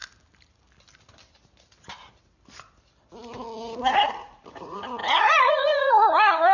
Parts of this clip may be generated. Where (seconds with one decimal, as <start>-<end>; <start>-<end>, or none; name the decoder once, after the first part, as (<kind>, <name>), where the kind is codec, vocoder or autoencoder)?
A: 3.9-6.5 (vocoder, Vocos)